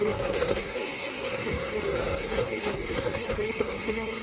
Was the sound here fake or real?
fake